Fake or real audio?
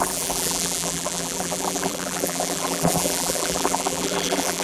fake